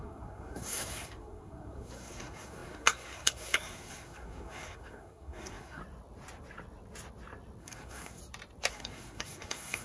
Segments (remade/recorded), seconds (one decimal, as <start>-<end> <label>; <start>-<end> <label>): 0.0-5.8 remade; 5.8-7.6 recorded; 7.6-8.2 remade; 8.2-8.7 recorded; 8.7-9.8 remade